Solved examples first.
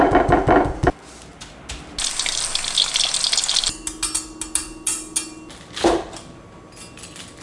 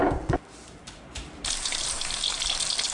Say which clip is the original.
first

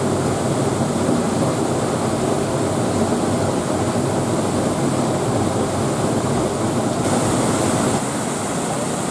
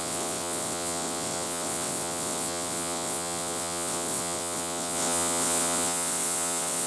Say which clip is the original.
first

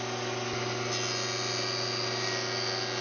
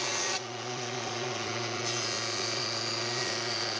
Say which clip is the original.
first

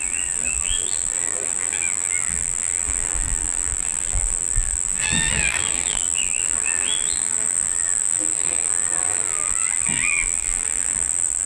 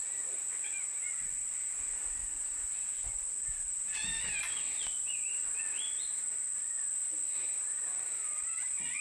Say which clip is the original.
second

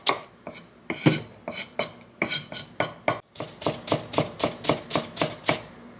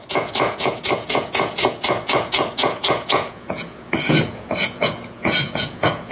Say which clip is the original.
first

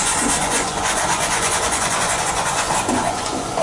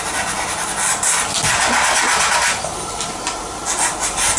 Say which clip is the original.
second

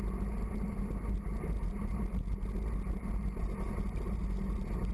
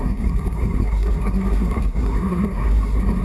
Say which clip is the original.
first